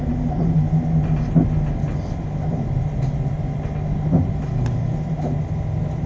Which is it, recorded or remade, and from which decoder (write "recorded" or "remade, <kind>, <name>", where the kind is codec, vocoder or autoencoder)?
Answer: recorded